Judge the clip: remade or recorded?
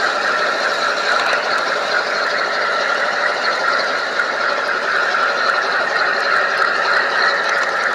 recorded